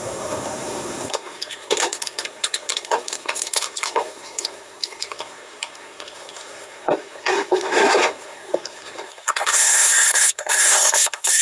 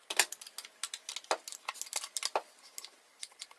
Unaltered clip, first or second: second